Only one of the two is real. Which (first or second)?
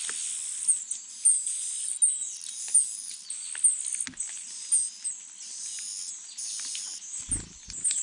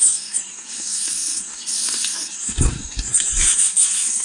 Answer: first